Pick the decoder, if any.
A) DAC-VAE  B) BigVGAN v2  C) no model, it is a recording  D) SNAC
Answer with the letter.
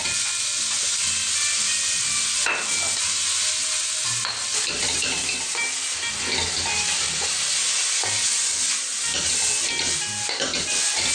C